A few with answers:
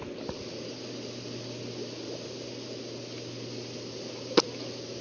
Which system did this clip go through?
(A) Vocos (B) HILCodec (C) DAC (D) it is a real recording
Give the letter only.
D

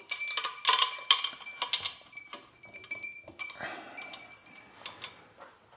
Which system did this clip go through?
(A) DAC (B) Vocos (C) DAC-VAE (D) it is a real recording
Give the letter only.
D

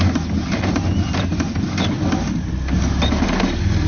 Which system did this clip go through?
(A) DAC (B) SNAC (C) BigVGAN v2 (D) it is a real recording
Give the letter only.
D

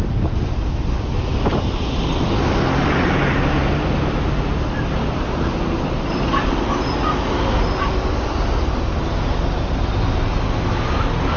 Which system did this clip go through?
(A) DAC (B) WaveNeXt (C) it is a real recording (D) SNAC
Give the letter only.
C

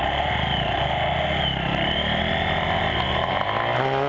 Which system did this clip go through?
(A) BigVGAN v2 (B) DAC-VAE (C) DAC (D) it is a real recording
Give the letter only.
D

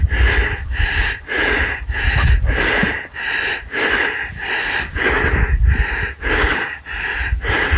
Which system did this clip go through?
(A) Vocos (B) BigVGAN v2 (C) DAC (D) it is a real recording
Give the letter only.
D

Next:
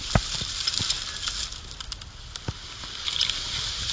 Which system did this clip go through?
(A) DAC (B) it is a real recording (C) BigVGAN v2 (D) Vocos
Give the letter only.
B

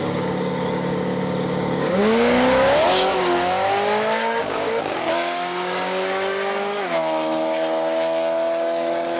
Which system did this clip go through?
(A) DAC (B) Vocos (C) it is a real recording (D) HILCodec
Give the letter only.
A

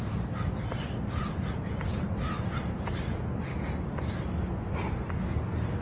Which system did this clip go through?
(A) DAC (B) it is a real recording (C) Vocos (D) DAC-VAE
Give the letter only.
B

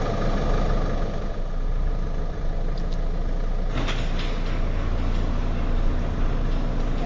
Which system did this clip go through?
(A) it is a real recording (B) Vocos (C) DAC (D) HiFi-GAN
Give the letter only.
A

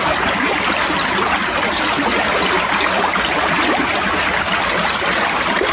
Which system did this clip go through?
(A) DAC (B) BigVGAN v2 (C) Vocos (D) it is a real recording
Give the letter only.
D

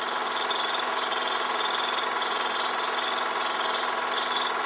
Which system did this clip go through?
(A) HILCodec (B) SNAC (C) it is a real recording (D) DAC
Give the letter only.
C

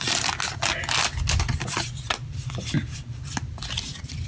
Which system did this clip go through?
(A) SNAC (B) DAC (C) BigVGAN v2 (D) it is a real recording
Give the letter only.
D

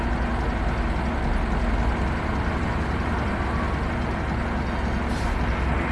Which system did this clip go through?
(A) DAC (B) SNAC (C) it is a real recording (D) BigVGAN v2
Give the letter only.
C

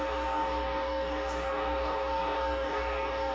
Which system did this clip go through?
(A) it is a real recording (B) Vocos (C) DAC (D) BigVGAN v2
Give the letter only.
C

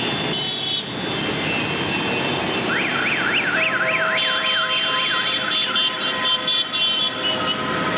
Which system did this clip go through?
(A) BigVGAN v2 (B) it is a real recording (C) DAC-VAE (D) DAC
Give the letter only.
B